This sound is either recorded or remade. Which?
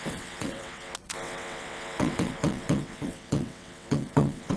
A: remade